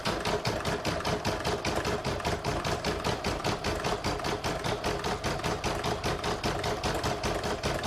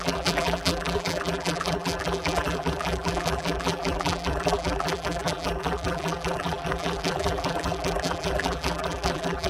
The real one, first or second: first